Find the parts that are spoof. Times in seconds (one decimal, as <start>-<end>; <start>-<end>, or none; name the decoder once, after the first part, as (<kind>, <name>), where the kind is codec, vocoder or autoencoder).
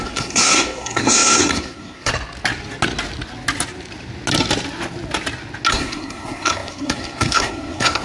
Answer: 0.0-2.1 (codec, SNAC); 5.7-8.0